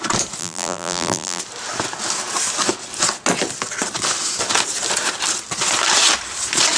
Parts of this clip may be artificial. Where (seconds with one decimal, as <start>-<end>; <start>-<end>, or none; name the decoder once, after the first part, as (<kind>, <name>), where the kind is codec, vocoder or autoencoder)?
0.4-1.4 (vocoder, BigVGAN v2)